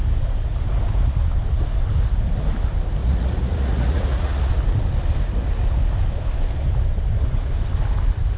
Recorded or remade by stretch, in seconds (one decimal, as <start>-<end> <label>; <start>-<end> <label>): 0.0-3.0 recorded; 3.0-4.5 remade; 4.5-8.4 recorded